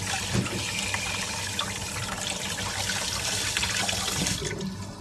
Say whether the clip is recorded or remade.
recorded